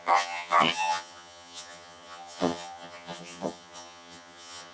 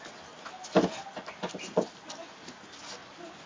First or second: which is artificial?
first